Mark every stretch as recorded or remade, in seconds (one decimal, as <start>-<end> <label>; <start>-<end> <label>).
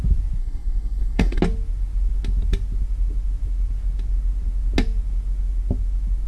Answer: 0.0-0.4 recorded; 0.4-1.4 remade; 1.4-6.3 recorded